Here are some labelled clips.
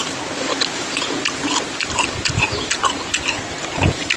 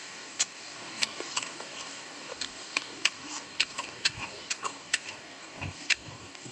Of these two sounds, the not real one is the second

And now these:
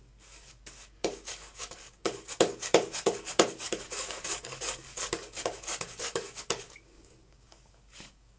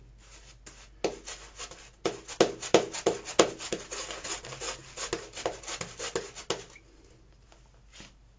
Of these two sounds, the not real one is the first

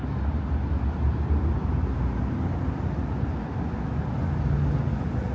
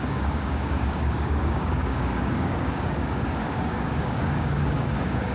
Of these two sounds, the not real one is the second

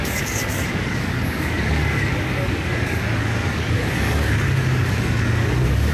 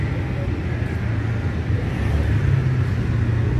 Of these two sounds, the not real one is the first